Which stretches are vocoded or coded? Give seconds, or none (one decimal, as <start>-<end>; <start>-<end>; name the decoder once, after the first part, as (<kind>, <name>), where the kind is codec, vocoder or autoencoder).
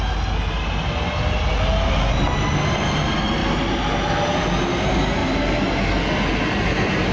none